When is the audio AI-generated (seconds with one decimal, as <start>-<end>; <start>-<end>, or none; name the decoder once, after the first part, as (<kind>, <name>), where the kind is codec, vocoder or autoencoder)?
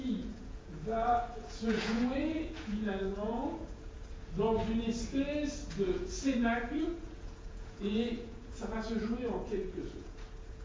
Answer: 0.0-4.6 (vocoder, Vocos); 5.7-10.6